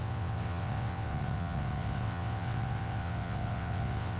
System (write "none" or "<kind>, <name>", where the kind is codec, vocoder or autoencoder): vocoder, WaveNeXt